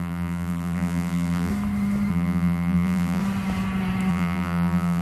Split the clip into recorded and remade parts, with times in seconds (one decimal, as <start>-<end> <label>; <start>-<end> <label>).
0.0-1.5 remade; 1.5-2.1 recorded; 2.1-3.2 remade; 3.2-4.1 recorded; 4.1-5.0 remade

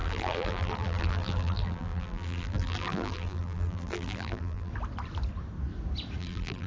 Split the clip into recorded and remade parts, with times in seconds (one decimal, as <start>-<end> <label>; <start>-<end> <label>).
0.0-4.7 remade; 4.7-6.2 recorded; 6.2-6.7 remade

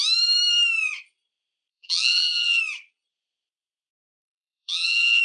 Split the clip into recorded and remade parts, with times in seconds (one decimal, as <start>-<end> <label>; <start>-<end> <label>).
0.0-1.7 recorded; 1.7-2.6 remade; 2.6-3.9 recorded; 3.9-5.2 remade